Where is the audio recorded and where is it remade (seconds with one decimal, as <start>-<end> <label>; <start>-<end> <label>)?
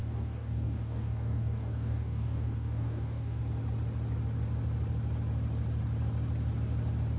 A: 0.0-3.4 remade; 3.4-7.2 recorded